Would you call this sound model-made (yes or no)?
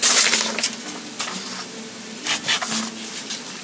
no